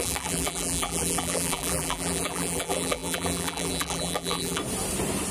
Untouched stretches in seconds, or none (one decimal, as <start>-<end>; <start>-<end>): 4.6-5.3